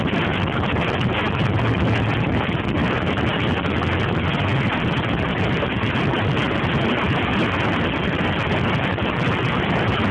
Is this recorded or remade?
recorded